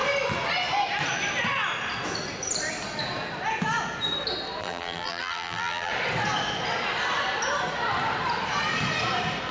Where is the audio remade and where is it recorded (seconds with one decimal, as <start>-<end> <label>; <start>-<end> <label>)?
0.0-4.6 recorded; 4.6-5.9 remade; 5.9-9.5 recorded